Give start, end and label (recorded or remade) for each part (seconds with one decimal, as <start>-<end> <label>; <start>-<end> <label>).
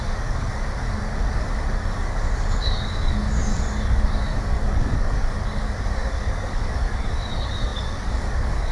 0.0-8.7 remade